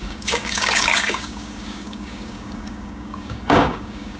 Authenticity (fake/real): fake